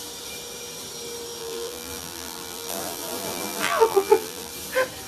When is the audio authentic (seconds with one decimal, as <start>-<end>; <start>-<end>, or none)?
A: 0.0-1.4; 4.5-5.1